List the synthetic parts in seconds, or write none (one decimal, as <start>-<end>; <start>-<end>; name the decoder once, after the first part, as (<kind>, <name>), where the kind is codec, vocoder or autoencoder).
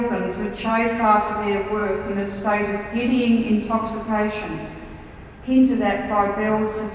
0.7-1.3 (autoencoder, DAC-VAE)